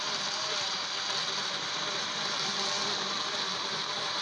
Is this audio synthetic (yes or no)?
yes